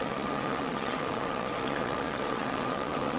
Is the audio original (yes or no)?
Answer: no